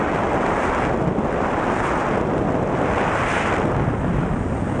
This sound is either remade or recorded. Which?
recorded